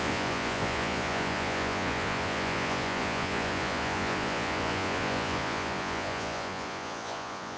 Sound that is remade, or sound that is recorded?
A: remade